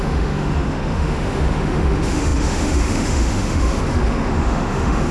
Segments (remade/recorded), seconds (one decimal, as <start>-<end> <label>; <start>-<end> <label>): 0.0-5.1 remade